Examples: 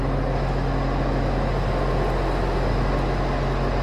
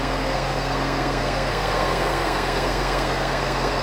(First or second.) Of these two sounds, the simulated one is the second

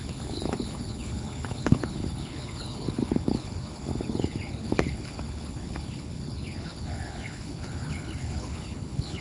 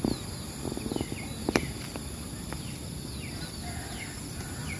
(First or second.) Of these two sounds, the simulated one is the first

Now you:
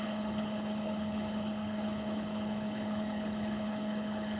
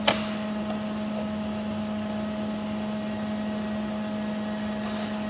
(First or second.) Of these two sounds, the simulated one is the first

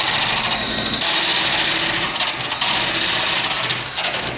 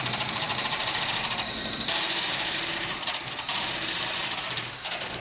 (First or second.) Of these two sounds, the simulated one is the second